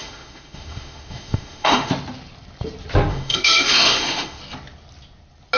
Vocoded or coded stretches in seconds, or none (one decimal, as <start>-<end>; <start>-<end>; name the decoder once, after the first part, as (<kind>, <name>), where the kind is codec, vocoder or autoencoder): 0.0-1.9 (autoencoder, DAC-VAE); 3.1-4.4